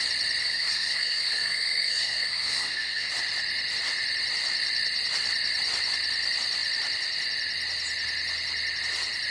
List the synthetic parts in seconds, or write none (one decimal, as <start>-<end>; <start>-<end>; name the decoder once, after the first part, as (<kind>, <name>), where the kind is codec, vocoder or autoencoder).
0.4-3.1 (codec, SNAC)

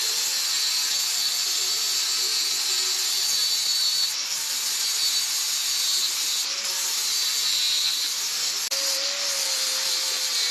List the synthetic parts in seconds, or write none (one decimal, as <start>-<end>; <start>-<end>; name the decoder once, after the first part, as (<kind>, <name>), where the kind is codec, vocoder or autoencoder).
none

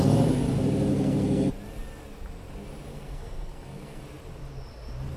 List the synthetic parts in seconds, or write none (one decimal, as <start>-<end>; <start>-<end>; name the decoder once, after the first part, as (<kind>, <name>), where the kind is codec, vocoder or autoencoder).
0.9-1.5 (codec, SNAC); 2.9-4.0